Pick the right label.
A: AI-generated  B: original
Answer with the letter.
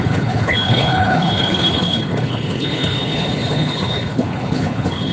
A